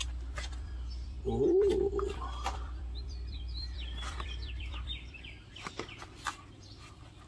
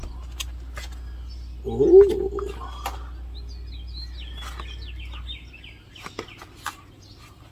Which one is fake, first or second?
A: first